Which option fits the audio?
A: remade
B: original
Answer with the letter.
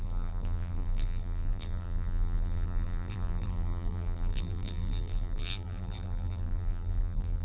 A